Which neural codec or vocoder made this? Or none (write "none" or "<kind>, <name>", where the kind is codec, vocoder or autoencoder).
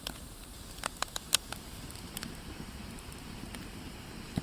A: vocoder, BigVGAN v2